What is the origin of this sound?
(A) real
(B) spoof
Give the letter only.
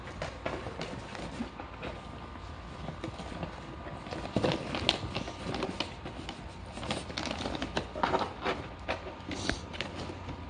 A